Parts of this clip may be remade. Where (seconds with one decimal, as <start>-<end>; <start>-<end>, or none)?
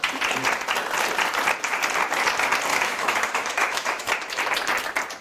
2.7-4.1